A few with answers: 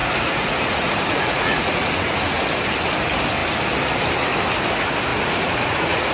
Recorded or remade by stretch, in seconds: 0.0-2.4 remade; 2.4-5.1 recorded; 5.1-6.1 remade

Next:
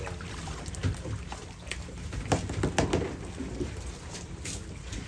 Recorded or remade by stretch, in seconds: 0.0-0.8 remade; 0.8-3.8 recorded; 3.8-5.1 remade

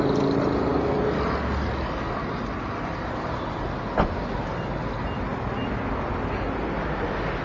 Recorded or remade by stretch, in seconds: 0.0-7.4 recorded

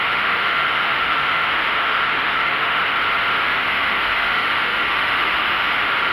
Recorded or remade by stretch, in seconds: 0.0-2.8 remade; 2.8-3.4 recorded; 3.4-6.1 remade

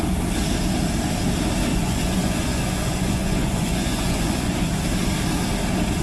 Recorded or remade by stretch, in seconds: 0.0-1.7 recorded; 1.7-4.7 remade; 4.7-6.0 recorded

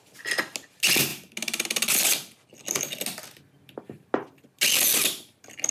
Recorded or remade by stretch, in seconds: 0.0-5.7 recorded